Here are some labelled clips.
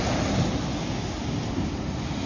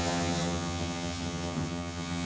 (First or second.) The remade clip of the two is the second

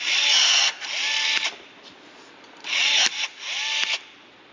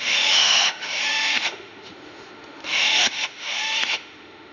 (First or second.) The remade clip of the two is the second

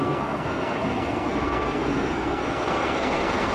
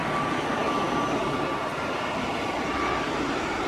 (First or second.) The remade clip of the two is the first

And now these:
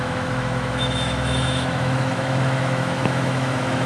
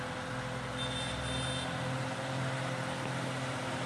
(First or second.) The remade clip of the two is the first